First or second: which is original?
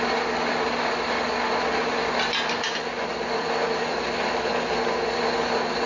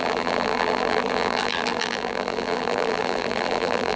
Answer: first